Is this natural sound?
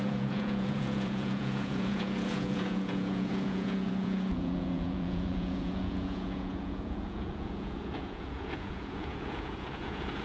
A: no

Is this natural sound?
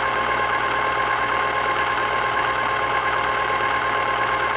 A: yes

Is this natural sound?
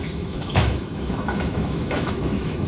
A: no